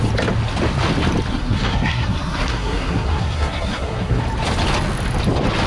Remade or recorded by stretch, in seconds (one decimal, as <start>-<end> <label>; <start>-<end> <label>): 0.0-1.3 recorded; 1.3-4.2 remade; 4.2-5.7 recorded